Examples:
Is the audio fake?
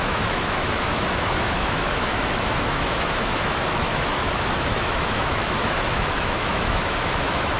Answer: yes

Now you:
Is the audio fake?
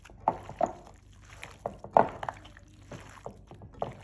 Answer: no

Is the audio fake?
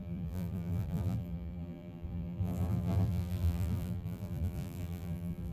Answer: yes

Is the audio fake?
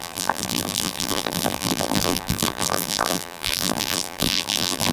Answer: yes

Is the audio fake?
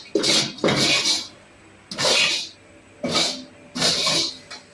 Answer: no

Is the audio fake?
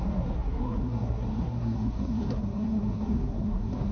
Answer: yes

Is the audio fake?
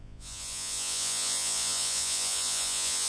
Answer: yes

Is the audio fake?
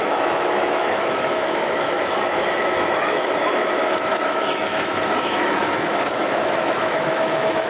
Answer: yes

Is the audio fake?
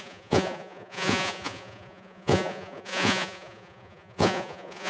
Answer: yes